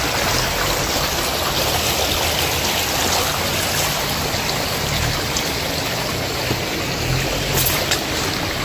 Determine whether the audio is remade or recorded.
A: recorded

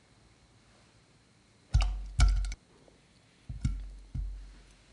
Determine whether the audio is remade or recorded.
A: recorded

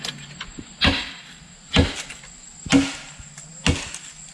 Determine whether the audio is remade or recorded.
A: recorded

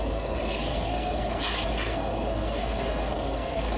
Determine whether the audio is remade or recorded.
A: remade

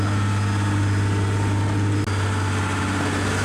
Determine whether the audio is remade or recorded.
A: recorded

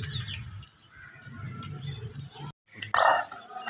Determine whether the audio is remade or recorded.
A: recorded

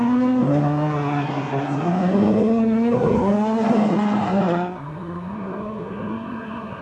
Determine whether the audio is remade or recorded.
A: remade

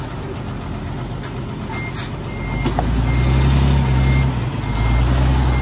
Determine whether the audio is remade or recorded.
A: recorded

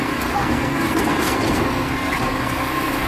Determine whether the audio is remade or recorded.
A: remade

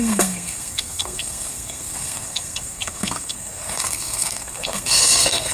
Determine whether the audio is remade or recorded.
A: remade